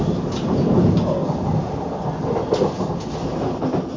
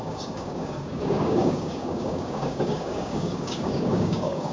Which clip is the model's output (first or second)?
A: second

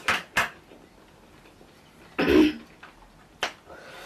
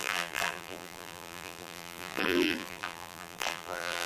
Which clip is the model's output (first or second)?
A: second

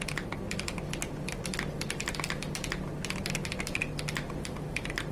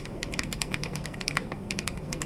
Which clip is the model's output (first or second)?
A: second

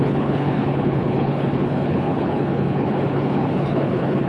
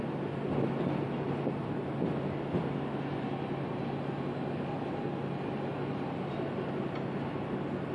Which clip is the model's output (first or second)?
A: first